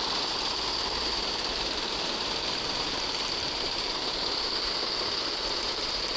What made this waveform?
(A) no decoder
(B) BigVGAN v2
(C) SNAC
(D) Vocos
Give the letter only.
B